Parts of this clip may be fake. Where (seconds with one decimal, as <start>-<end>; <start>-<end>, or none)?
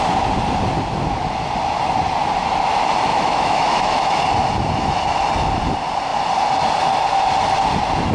3.1-4.2